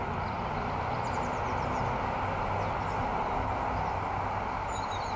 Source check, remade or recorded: recorded